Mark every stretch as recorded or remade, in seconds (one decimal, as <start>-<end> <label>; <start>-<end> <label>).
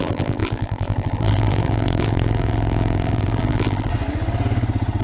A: 0.0-3.9 remade; 3.9-5.0 recorded